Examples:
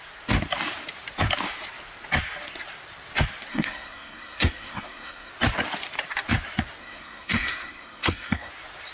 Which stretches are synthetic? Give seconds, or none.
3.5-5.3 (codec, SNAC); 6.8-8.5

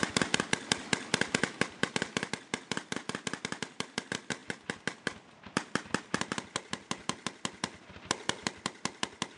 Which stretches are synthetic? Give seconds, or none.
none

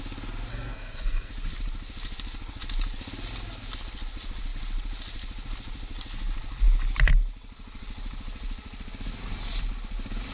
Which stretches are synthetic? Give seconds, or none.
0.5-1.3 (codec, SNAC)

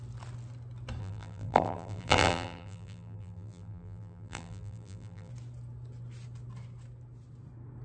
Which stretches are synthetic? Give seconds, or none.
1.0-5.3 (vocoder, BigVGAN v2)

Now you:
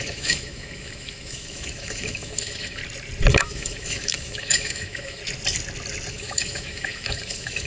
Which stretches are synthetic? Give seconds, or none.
0.0-2.8 (autoencoder, DAC-VAE); 3.3-5.2; 6.1-7.7